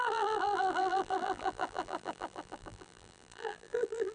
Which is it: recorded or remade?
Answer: remade